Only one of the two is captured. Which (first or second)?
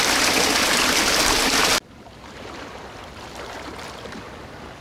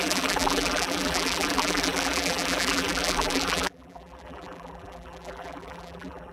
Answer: first